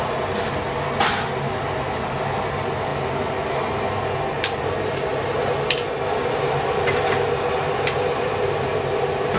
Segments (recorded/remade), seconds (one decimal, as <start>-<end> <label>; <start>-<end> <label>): 0.0-9.4 recorded